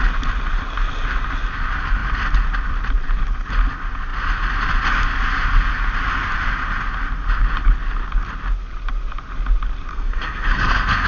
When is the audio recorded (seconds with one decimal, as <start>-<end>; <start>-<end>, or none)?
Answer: 0.0-9.9